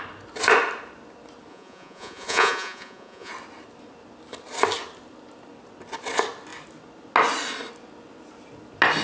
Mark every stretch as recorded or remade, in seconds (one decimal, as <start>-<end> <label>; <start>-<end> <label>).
0.0-1.5 recorded; 1.5-3.3 remade; 3.3-9.0 recorded